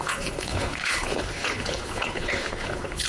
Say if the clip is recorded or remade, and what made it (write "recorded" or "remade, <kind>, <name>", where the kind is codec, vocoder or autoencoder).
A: remade, codec, HILCodec